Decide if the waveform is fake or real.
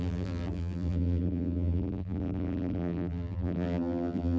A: fake